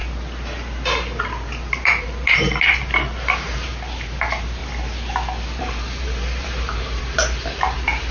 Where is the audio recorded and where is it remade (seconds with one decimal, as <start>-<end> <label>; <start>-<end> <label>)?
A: 0.0-1.2 recorded; 1.2-4.6 remade; 4.6-5.6 recorded; 5.6-8.1 remade